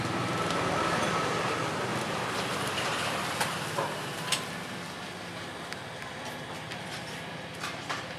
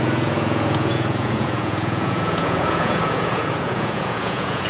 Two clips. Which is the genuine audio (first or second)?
first